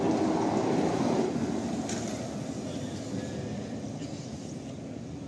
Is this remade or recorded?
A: recorded